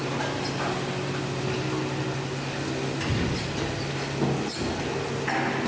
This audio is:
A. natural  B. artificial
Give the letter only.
A